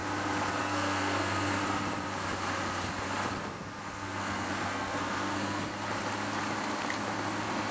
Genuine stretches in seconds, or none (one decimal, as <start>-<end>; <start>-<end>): 0.0-0.6; 1.6-3.5; 5.7-7.7